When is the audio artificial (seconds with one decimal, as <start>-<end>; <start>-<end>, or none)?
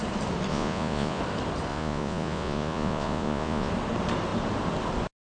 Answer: 0.5-1.2; 1.7-3.7